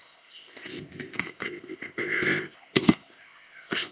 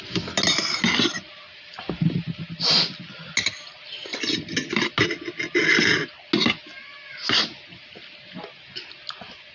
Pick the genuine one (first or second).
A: second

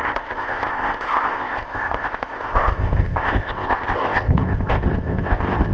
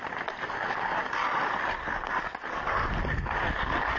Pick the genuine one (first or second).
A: second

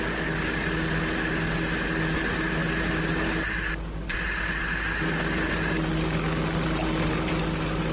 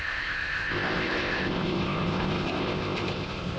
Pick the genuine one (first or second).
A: first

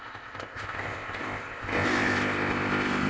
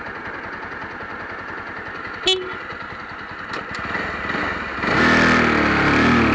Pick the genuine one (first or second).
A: second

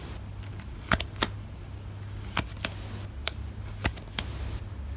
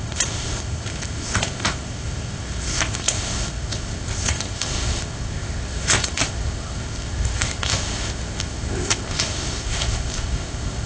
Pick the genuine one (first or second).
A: first